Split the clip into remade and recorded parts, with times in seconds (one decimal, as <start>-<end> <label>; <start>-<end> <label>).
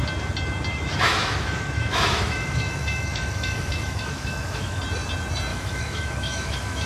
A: 0.0-0.7 recorded; 0.7-4.8 remade; 4.8-5.5 recorded; 5.5-6.9 remade